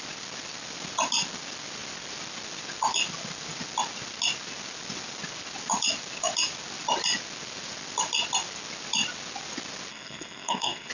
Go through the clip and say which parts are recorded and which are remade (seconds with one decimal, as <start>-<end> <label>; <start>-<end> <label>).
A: 0.0-9.9 recorded; 9.9-10.9 remade